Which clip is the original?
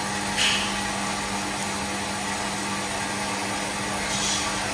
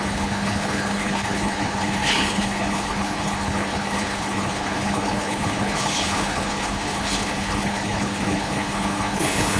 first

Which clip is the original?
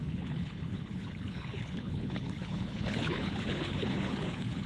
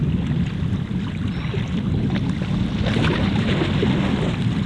second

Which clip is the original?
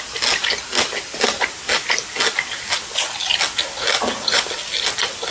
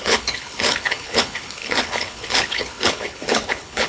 first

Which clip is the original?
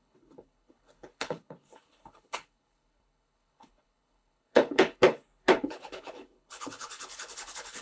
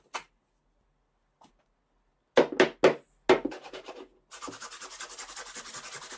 second